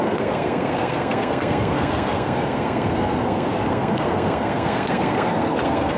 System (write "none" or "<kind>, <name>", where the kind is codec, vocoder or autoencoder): codec, SNAC